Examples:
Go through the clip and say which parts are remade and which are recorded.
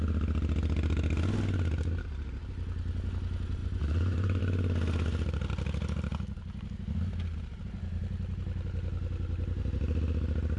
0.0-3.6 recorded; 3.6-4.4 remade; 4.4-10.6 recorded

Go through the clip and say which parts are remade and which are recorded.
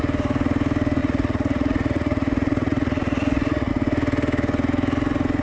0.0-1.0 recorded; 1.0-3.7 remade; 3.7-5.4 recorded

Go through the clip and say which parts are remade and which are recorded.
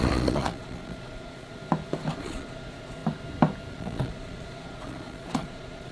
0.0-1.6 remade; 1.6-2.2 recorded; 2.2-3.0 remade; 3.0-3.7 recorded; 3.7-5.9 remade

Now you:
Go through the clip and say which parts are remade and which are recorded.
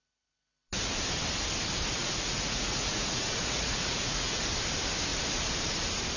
0.0-2.0 recorded; 2.0-4.4 remade; 4.4-6.2 recorded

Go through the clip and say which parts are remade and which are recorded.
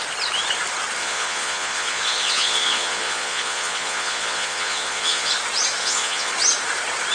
0.0-1.0 recorded; 1.0-5.3 remade; 5.3-5.8 recorded; 5.8-6.3 remade; 6.3-7.1 recorded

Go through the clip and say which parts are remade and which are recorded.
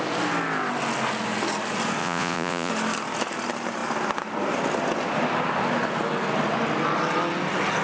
0.0-2.0 recorded; 2.0-2.7 remade; 2.7-7.8 recorded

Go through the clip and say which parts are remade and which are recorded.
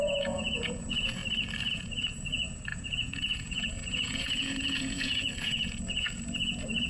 0.0-1.2 remade; 1.2-1.7 recorded; 1.7-6.9 remade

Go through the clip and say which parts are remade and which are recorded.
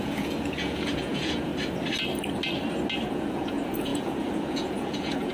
0.0-1.5 remade; 1.5-3.1 recorded; 3.1-5.3 remade